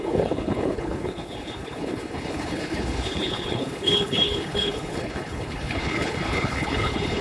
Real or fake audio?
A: fake